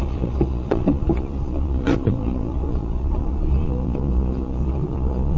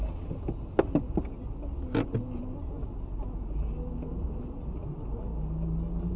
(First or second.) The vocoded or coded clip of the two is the first